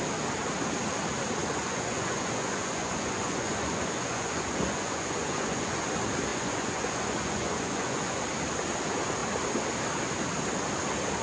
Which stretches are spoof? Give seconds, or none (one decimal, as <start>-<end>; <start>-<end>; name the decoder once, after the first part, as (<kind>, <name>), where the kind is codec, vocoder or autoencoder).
1.4-5.8 (vocoder, Vocos); 6.3-8.2